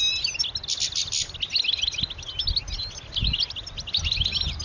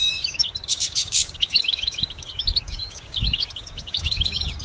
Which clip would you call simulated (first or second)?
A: second